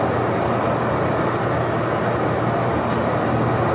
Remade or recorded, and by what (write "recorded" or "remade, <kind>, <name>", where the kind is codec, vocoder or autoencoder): recorded